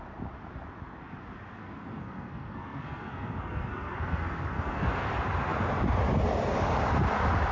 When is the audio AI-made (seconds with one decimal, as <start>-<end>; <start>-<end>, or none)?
1.6-5.1